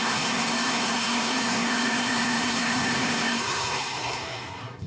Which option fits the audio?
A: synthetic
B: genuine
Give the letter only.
A